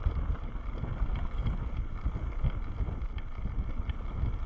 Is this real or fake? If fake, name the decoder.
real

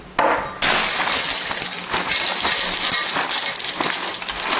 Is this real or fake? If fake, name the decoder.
real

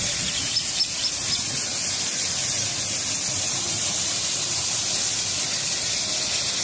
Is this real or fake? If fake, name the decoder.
real